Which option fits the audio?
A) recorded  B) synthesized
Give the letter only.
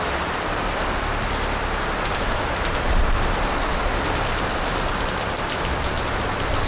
B